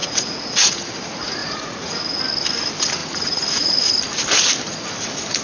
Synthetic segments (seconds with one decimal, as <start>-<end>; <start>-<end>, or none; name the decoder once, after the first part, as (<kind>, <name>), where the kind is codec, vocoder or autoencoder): 0.0-0.9 (vocoder, Vocos); 1.4-2.2; 3.0-3.9